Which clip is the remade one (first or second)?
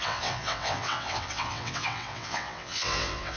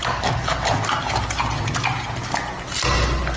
first